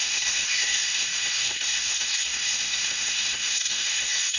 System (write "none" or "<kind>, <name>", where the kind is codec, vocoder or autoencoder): codec, SNAC